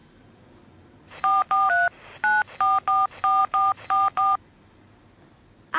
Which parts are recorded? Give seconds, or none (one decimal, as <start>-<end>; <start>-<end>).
1.7-3.4; 5.0-5.8